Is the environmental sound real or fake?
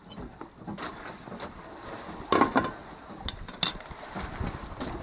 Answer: real